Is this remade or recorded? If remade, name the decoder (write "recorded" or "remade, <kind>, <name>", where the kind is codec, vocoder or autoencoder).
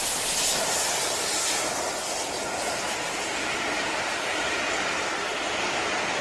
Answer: recorded